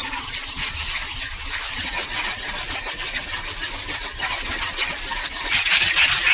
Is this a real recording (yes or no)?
no